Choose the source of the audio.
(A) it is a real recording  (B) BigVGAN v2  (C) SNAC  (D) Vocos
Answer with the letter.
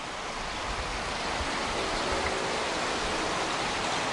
A